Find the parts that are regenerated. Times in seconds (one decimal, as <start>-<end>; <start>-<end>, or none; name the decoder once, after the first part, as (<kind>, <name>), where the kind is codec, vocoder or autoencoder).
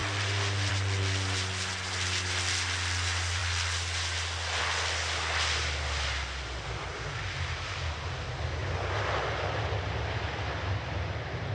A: none